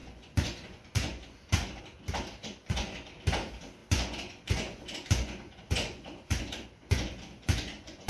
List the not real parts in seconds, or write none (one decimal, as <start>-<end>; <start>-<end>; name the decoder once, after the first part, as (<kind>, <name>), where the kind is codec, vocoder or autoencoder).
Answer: 0.0-1.8 (vocoder, Vocos); 2.4-3.1; 3.8-8.1